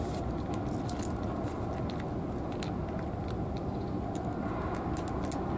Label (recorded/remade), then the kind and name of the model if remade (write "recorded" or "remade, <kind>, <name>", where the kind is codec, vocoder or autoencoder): recorded